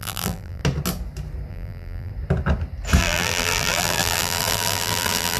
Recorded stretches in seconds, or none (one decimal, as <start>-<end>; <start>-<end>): 0.6-1.5; 2.1-3.0